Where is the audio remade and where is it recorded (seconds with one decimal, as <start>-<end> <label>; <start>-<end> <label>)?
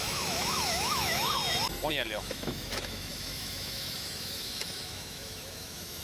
0.0-1.4 remade; 1.4-1.9 recorded; 1.9-6.0 remade